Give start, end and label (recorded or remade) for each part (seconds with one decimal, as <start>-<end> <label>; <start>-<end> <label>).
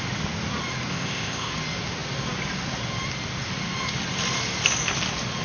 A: 0.0-0.9 recorded; 0.9-1.5 remade; 1.5-5.4 recorded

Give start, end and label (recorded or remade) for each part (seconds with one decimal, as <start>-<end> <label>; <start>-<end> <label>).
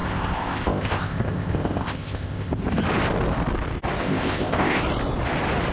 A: 0.0-2.5 remade; 2.5-4.0 recorded; 4.0-4.8 remade; 4.8-5.7 recorded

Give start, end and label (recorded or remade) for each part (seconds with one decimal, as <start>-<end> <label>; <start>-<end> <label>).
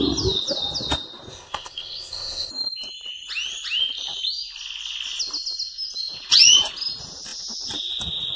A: 0.0-1.3 recorded; 1.3-2.5 remade; 2.5-8.4 recorded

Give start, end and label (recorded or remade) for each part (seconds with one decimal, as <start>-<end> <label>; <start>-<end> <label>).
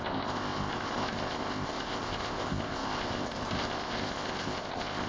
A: 0.0-5.1 remade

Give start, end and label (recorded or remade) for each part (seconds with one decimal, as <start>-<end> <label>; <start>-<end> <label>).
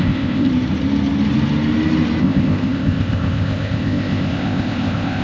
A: 0.0-0.5 remade; 0.5-2.2 recorded; 2.2-5.2 remade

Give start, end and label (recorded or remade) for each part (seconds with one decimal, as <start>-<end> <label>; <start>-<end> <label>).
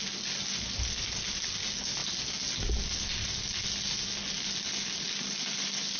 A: 0.0-6.0 recorded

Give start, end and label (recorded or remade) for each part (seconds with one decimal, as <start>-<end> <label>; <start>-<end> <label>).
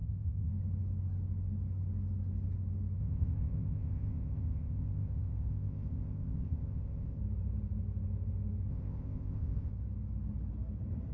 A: 0.0-0.5 remade; 0.5-3.0 recorded; 3.0-7.2 remade; 7.2-8.7 recorded; 8.7-9.7 remade; 9.7-11.1 recorded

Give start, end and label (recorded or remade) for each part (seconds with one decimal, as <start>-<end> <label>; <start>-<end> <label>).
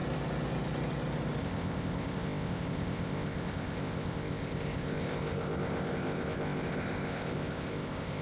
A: 0.0-1.4 recorded; 1.4-8.2 remade